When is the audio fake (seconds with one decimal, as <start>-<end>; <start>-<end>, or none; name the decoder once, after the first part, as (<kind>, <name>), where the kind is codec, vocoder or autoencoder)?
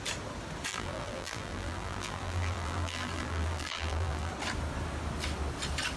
0.7-4.3 (vocoder, BigVGAN v2)